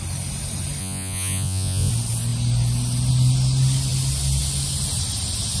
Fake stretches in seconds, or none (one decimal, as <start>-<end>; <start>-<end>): 0.8-1.9